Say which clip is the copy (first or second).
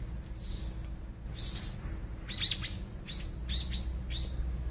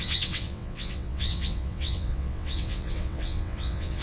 second